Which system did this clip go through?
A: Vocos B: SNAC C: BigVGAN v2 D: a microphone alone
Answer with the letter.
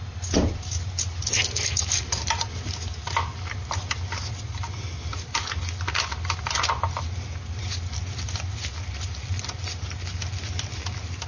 D